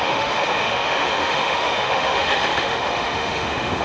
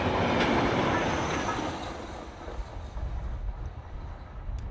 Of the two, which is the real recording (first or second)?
second